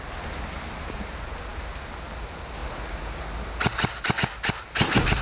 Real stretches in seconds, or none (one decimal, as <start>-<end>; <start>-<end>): 0.0-5.2